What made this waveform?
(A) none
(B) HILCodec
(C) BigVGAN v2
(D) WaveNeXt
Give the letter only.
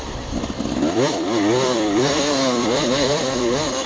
C